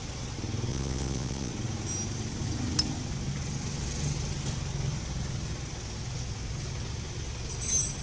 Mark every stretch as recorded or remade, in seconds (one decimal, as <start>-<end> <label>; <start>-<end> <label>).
0.0-0.7 recorded; 0.7-1.5 remade; 1.5-8.0 recorded